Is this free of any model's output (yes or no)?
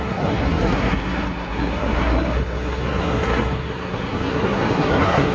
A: no